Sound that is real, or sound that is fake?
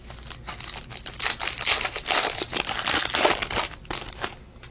real